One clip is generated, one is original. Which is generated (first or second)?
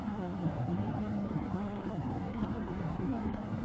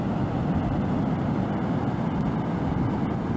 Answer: first